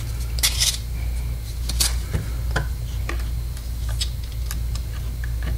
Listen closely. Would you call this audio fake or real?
real